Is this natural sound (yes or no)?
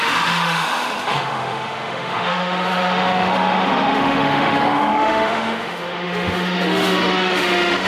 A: no